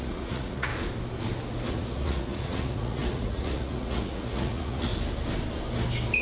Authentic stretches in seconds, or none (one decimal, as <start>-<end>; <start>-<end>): 0.7-1.7; 4.9-6.2